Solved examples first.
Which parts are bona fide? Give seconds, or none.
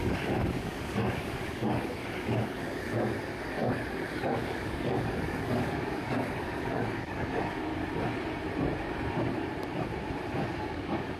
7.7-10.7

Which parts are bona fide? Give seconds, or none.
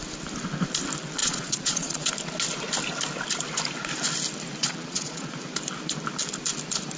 0.0-1.2; 2.1-4.6; 5.4-7.0